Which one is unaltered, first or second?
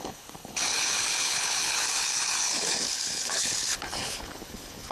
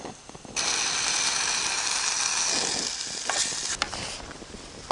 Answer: second